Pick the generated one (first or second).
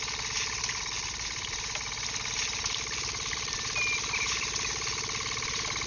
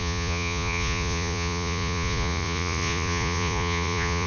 second